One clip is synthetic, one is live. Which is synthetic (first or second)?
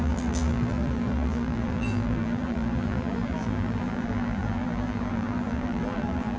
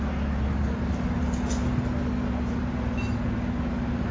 first